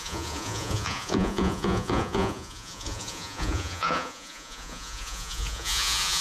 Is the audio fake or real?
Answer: fake